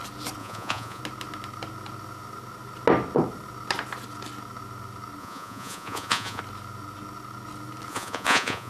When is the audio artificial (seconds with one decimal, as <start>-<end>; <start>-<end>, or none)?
0.4-1.0; 5.2-6.4; 7.9-8.7